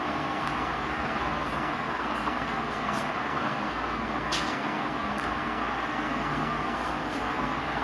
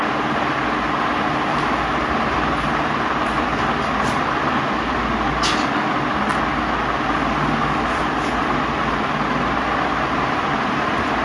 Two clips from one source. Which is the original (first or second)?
second